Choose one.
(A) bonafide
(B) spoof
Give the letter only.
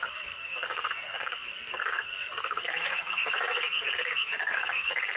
B